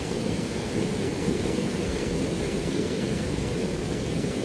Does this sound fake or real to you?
fake